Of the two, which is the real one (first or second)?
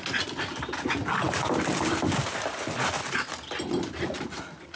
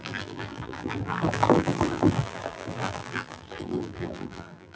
first